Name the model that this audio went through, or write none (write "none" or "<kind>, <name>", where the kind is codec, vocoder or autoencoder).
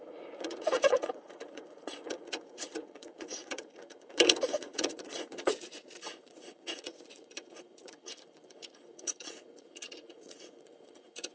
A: vocoder, Vocos